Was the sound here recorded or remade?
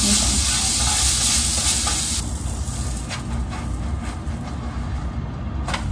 recorded